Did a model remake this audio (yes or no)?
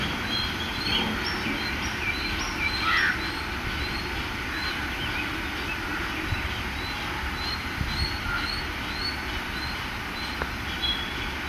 no